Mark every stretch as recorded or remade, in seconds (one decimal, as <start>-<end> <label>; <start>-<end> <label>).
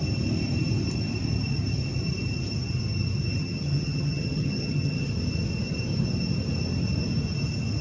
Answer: 0.0-3.4 recorded; 3.4-5.1 remade; 5.1-7.8 recorded